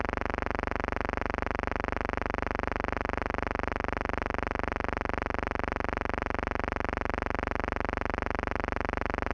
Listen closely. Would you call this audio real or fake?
real